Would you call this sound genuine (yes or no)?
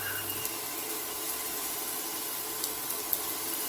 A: yes